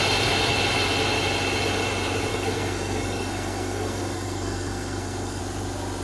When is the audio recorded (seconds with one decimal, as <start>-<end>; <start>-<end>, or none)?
0.0-2.3; 5.4-6.0